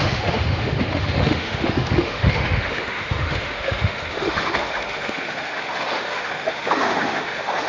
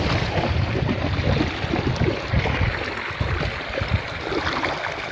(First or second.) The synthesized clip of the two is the first